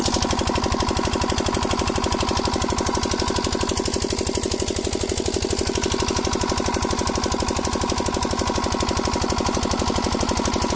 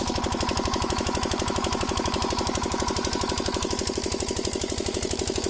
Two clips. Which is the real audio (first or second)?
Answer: first